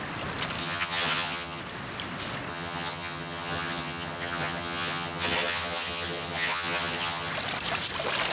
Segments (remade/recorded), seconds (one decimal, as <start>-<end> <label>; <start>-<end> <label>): 0.0-0.6 recorded; 0.6-1.6 remade; 1.6-2.5 recorded; 2.5-7.3 remade; 7.3-8.3 recorded